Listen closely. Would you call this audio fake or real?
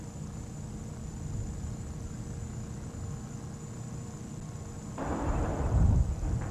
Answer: real